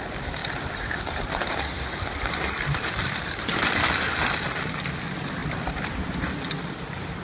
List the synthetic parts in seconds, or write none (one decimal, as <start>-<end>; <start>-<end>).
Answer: 0.4-3.9; 5.4-6.0